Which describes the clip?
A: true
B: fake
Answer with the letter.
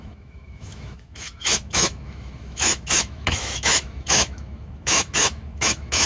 B